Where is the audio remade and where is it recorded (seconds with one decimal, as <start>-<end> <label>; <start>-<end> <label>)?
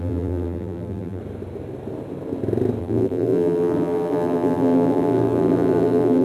0.0-1.2 remade; 1.2-2.8 recorded; 2.8-6.2 remade